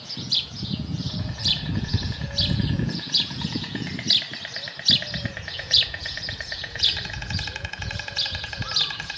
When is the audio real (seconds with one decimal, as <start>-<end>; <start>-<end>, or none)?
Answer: 3.9-5.4